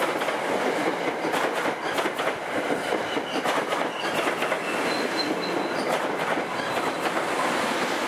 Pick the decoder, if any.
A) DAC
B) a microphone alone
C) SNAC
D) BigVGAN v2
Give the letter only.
B